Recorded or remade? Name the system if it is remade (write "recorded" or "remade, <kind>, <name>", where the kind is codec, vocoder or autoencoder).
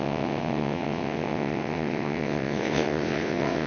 remade, vocoder, WaveNeXt